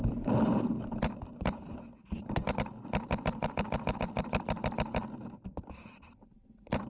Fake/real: fake